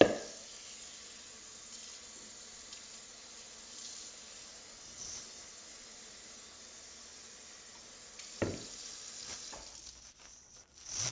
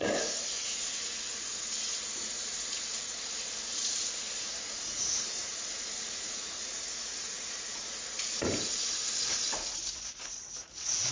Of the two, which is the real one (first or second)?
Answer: first